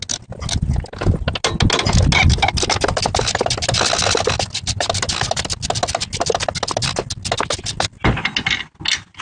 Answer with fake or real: real